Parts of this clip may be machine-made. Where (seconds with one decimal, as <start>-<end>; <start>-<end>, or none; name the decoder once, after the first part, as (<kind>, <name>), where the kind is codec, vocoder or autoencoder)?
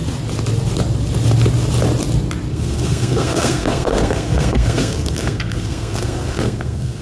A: 2.5-7.0 (codec, SNAC)